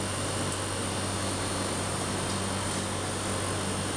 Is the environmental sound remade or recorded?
recorded